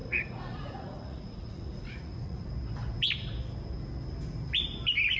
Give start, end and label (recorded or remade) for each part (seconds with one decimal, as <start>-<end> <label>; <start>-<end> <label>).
0.0-2.5 remade; 2.5-5.2 recorded